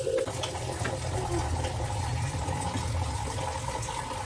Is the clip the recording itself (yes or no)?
yes